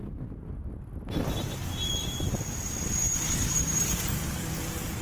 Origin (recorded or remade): recorded